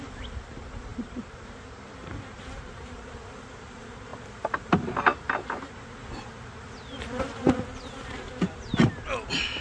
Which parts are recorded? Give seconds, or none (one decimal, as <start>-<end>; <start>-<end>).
0.0-0.9; 3.0-9.6